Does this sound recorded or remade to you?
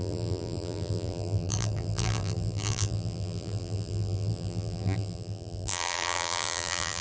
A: remade